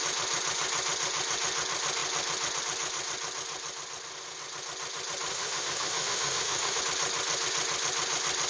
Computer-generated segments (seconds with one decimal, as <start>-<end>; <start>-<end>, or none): 5.3-6.8

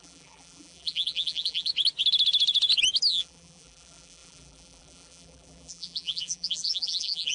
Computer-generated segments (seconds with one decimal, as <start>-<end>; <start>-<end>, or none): 0.0-1.7; 3.1-7.3

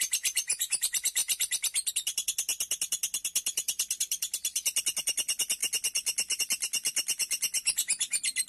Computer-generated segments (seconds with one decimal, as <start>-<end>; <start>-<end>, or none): none

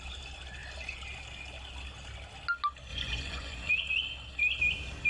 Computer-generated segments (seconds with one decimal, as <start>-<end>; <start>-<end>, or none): 2.9-3.7

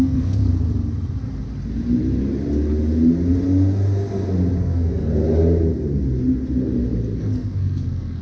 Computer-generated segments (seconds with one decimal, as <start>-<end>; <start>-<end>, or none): 0.0-0.5; 4.6-5.1; 7.2-8.2

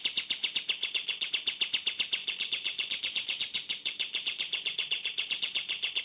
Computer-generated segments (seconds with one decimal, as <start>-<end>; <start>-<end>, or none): 0.8-1.3; 2.2-6.0

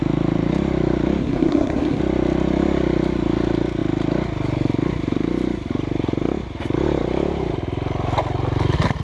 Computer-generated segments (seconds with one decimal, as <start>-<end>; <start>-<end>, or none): 1.2-2.0

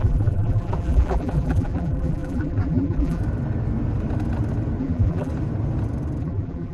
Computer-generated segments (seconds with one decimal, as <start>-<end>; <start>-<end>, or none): 0.0-3.2; 4.8-5.3; 6.2-6.7